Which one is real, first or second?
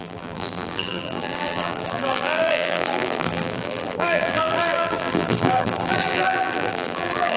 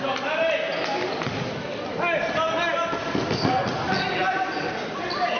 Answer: second